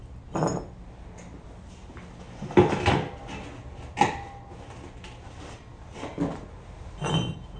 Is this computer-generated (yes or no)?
no